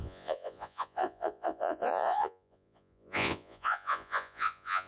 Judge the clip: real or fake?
fake